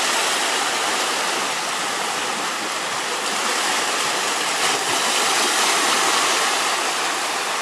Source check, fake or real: real